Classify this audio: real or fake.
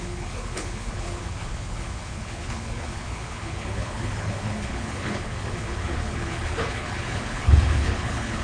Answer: fake